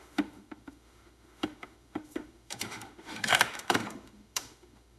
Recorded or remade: remade